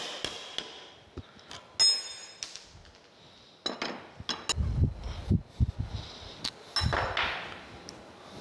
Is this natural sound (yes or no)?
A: yes